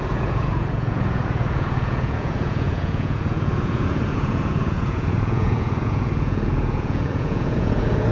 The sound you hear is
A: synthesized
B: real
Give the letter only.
A